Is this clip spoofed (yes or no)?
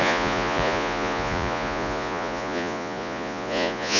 yes